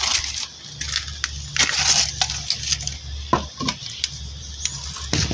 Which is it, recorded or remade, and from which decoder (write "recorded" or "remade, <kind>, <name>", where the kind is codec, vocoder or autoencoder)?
recorded